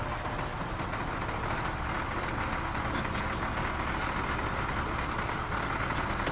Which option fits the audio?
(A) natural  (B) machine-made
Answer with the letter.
A